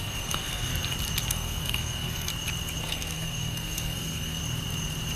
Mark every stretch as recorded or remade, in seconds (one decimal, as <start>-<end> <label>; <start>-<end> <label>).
0.0-0.7 remade; 0.7-1.3 recorded; 1.3-2.3 remade; 2.3-2.8 recorded; 2.8-4.4 remade; 4.4-5.2 recorded